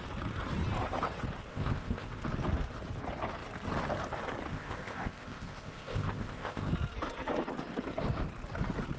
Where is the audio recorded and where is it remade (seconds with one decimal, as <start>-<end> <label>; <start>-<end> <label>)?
0.0-1.5 recorded; 1.5-2.2 remade; 2.2-4.5 recorded; 4.5-6.7 remade; 6.7-9.0 recorded